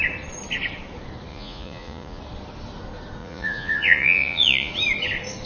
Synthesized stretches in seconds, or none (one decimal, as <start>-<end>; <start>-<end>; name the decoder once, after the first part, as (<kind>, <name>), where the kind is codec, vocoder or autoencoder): 1.3-2.2 (vocoder, Vocos); 3.2-4.7